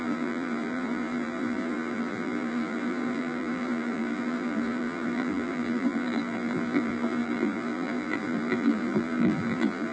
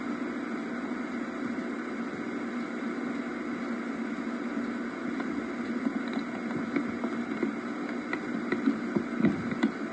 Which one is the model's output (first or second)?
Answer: first